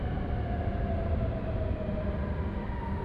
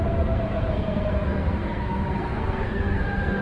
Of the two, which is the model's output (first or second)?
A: second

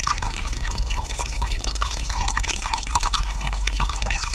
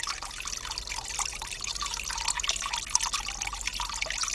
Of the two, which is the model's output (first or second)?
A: first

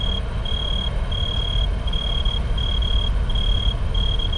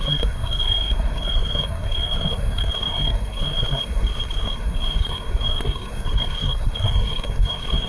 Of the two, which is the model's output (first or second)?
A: second